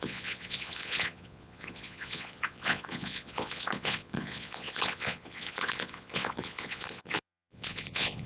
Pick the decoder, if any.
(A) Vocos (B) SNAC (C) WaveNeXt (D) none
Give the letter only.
A